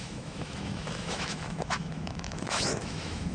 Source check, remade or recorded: remade